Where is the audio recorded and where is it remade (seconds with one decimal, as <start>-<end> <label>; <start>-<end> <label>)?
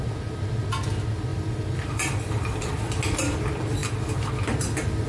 0.0-1.3 recorded; 1.3-2.9 remade; 2.9-3.8 recorded; 3.8-4.3 remade; 4.3-5.1 recorded